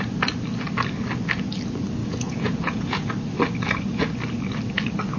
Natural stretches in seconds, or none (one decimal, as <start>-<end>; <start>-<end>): 0.0-2.0; 3.1-5.2